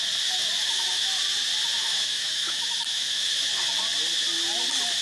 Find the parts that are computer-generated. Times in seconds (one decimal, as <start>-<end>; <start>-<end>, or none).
0.6-1.2; 1.8-3.5